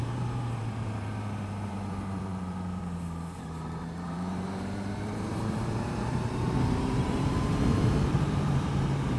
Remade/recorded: remade